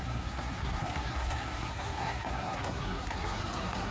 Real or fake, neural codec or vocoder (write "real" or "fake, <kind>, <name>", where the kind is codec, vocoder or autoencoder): fake, codec, SNAC